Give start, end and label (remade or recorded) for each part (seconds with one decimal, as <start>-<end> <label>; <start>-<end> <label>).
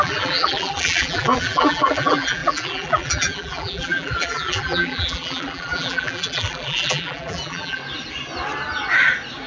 0.0-7.8 remade; 7.8-9.5 recorded